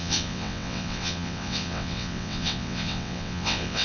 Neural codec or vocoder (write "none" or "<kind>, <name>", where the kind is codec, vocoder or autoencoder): vocoder, WaveNeXt